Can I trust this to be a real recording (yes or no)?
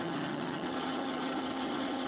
no